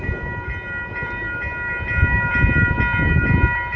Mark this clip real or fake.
real